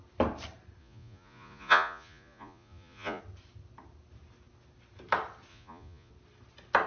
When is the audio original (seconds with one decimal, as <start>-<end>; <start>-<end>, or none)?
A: 0.0-0.8; 3.2-5.5; 6.1-6.9